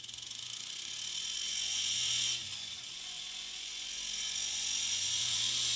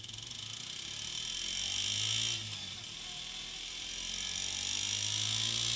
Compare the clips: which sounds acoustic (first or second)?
second